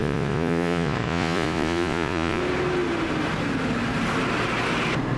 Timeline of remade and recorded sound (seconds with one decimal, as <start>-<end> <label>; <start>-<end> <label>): 0.0-2.4 remade; 2.4-5.2 recorded